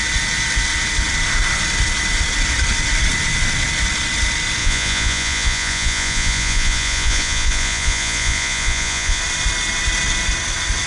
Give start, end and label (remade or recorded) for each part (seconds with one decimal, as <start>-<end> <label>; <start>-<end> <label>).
0.0-4.6 recorded; 4.6-9.2 remade; 9.2-10.9 recorded